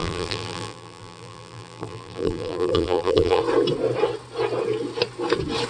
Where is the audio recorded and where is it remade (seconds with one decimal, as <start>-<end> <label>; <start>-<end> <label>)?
0.0-3.4 remade; 3.4-5.7 recorded